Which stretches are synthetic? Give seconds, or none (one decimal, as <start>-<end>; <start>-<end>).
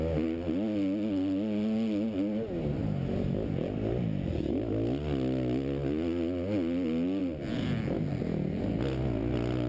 none